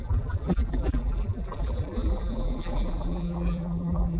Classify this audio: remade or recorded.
remade